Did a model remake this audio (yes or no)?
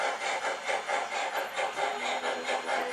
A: no